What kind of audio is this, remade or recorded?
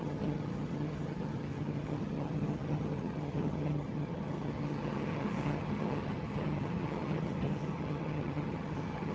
remade